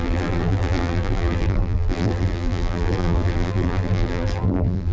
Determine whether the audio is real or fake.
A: fake